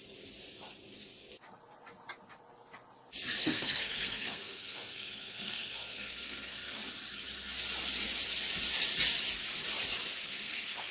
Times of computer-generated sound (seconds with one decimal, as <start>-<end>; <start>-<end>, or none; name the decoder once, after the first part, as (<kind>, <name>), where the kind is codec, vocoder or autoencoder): 3.4-6.8 (codec, SNAC); 10.2-10.9